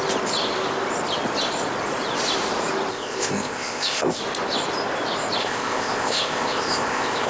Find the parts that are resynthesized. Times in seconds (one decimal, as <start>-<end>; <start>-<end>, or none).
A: 2.9-4.2; 5.4-7.3